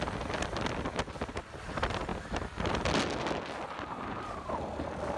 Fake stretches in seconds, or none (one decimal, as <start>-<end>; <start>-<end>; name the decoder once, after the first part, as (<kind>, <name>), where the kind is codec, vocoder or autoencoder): none